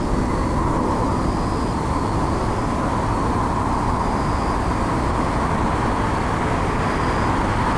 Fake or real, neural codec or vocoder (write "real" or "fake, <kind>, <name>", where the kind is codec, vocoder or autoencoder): real